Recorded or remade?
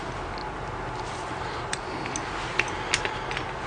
recorded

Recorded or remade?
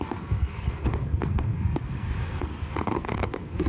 remade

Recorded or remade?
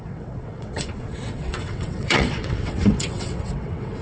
remade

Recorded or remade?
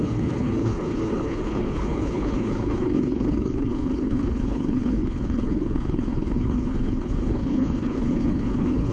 remade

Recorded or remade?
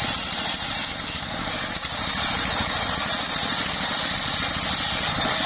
recorded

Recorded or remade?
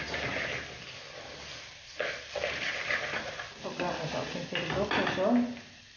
recorded